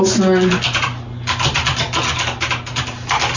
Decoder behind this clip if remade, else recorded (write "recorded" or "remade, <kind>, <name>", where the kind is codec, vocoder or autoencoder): recorded